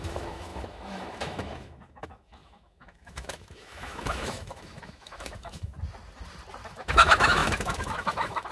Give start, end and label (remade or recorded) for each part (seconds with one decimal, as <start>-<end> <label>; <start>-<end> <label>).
0.0-5.7 remade; 5.7-6.7 recorded; 6.7-8.5 remade